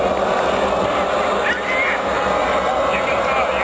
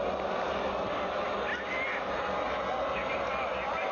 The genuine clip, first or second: first